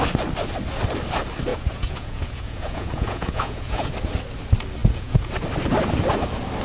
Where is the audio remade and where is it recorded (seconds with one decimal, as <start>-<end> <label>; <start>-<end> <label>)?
0.0-1.5 recorded; 1.5-3.9 remade; 3.9-4.8 recorded; 4.8-5.3 remade; 5.3-6.6 recorded